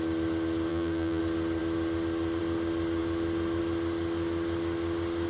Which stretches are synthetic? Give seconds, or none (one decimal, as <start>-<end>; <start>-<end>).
0.7-1.2